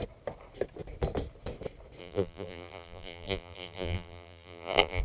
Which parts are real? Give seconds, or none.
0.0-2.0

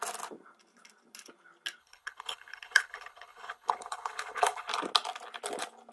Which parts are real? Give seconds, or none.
0.0-1.8; 4.7-5.9

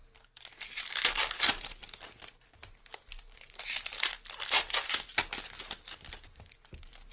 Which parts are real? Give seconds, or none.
0.0-1.8; 5.2-7.1

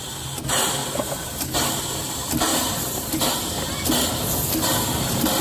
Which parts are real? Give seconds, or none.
0.0-0.8; 2.1-2.5; 3.2-5.4